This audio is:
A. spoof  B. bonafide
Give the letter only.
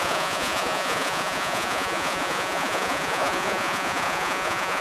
A